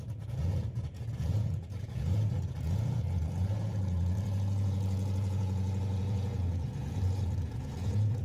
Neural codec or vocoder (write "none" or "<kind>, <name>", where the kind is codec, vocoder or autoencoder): vocoder, Vocos